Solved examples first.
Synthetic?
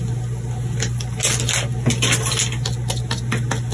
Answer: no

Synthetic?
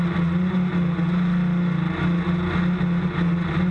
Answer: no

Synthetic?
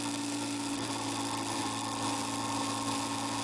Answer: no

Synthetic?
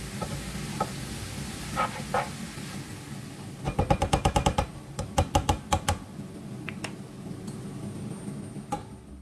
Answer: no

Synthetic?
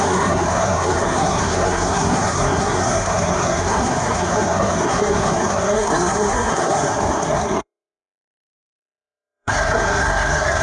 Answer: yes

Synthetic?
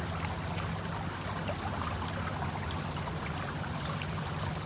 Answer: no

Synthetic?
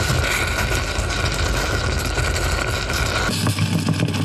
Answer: no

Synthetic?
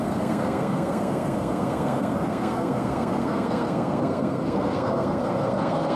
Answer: yes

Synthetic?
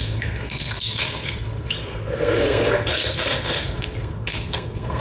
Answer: yes